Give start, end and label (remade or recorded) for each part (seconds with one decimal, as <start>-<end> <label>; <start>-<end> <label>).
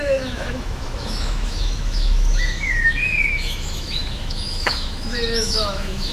0.0-6.1 remade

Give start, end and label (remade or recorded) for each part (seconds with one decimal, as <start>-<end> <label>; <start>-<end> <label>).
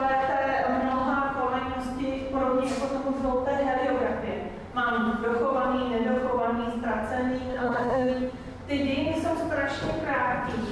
0.0-7.5 recorded; 7.5-8.1 remade; 8.1-10.7 recorded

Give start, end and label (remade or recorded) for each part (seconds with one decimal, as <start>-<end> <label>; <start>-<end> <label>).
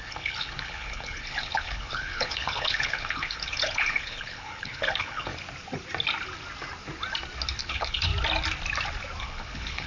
0.0-5.3 remade; 5.3-7.6 recorded; 7.6-8.1 remade; 8.1-9.2 recorded; 9.2-9.9 remade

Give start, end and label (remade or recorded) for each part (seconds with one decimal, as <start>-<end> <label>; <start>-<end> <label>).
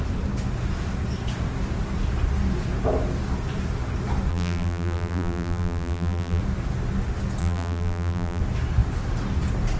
0.0-4.3 recorded; 4.3-6.4 remade; 6.4-7.4 recorded; 7.4-8.4 remade; 8.4-9.8 recorded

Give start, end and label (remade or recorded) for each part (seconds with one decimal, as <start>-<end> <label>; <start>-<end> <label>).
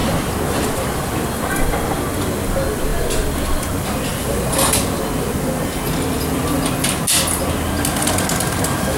0.0-9.0 recorded